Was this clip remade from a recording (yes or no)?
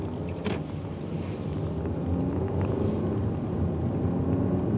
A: no